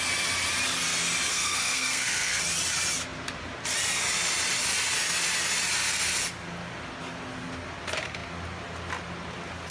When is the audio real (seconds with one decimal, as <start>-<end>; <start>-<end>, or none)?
0.0-1.3; 2.4-9.7